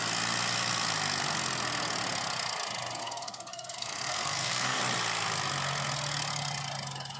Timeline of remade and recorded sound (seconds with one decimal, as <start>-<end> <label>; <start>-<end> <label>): 0.0-3.0 recorded; 3.0-4.8 remade; 4.8-7.2 recorded